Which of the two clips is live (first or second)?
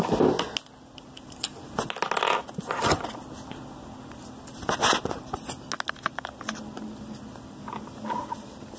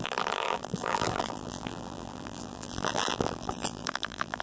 first